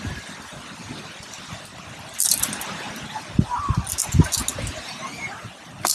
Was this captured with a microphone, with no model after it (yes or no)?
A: yes